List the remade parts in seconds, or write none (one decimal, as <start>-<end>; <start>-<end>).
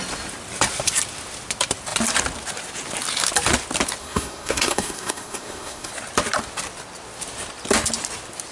4.0-5.9